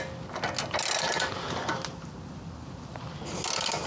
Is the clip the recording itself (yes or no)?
yes